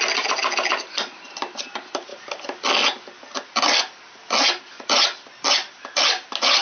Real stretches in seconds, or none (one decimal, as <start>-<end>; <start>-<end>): 0.0-6.6